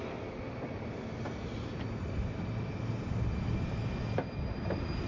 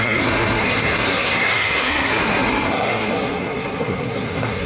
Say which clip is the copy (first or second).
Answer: second